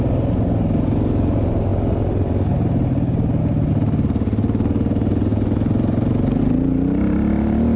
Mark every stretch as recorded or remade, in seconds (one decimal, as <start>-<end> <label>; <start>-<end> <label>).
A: 0.0-7.8 recorded